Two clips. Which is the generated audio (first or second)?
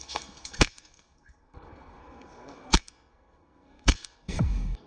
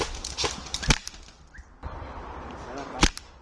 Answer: first